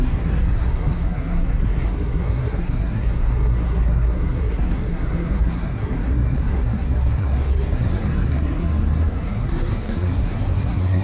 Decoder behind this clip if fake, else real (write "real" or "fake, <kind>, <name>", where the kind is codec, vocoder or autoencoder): fake, codec, SNAC